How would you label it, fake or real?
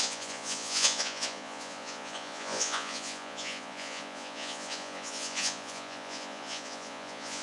fake